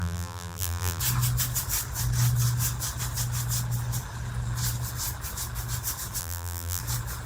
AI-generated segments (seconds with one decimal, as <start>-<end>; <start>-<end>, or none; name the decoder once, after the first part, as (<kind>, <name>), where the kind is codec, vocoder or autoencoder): 0.0-1.0 (vocoder, BigVGAN v2); 6.2-6.8

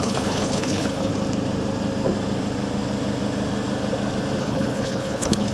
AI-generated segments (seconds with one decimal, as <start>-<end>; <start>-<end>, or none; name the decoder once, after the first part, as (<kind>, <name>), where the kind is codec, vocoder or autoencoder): 0.0-1.1 (codec, HILCodec); 4.4-5.5

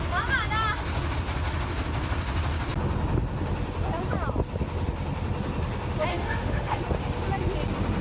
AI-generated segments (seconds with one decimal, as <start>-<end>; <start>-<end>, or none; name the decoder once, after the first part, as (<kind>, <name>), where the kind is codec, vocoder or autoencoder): 6.1-6.8 (autoencoder, DAC-VAE)